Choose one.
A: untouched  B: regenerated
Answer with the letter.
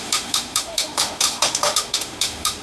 B